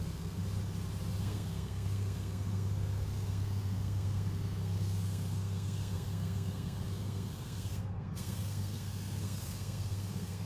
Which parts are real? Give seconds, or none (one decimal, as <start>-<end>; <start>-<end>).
0.4-1.2